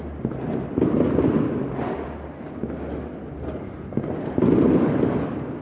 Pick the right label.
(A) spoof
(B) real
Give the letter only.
B